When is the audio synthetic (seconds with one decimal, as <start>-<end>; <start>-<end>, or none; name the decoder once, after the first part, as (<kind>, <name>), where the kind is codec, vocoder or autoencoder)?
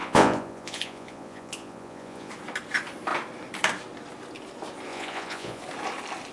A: 0.0-2.3 (vocoder, Vocos); 4.9-5.6